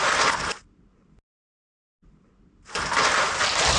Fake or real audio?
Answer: real